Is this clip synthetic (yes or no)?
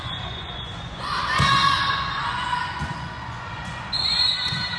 yes